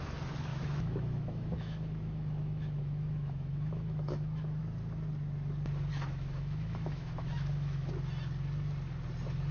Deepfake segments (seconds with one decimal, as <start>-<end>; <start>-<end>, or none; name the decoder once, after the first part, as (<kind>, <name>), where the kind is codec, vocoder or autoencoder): 0.5-4.6 (autoencoder, DAC-VAE); 5.9-7.9

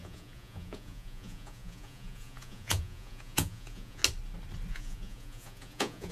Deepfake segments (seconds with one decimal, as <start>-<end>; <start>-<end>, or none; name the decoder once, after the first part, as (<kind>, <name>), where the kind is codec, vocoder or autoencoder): 0.0-4.0 (vocoder, Vocos); 4.7-6.1

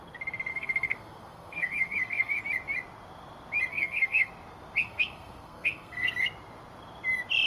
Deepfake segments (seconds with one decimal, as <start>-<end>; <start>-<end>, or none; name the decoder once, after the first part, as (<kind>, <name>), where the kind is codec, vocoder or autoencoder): 0.5-2.4 (codec, SNAC); 3.7-4.3; 4.8-6.2